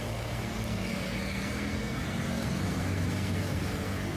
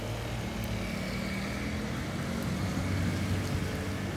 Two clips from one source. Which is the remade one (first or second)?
first